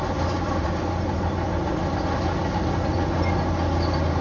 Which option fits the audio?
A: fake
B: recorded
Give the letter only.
B